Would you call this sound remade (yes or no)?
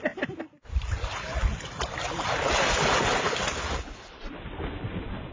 no